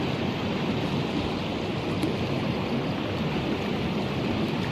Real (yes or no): yes